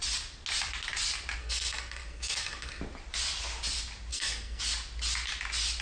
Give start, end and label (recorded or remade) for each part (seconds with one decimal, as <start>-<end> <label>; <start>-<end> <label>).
0.0-1.4 recorded; 1.4-2.8 remade; 2.8-4.1 recorded; 4.1-4.6 remade; 4.6-5.8 recorded